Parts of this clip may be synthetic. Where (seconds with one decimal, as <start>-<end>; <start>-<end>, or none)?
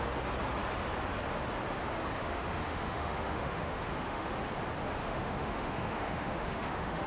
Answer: 2.2-4.3; 5.0-7.1